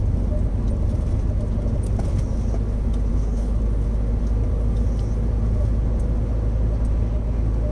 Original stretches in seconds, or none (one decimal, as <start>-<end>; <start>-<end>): 0.0-3.1; 3.6-7.7